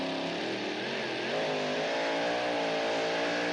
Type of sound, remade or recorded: recorded